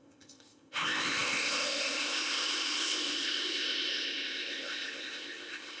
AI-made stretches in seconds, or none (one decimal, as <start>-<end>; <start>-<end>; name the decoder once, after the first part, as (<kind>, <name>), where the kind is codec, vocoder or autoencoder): 0.0-5.8 (codec, ZipCodec)